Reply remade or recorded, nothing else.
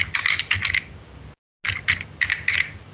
recorded